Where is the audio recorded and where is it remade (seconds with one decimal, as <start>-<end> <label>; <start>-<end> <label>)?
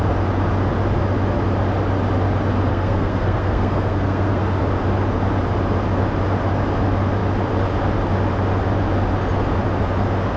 0.0-2.7 recorded; 2.7-4.6 remade; 4.6-10.4 recorded